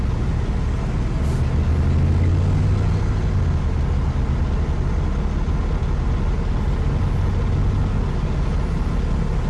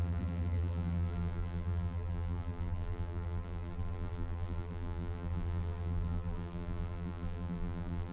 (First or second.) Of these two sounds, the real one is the first